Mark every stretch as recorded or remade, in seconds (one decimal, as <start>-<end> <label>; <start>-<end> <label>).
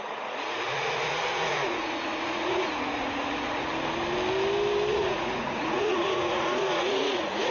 0.0-3.7 remade; 3.7-4.9 recorded; 4.9-7.5 remade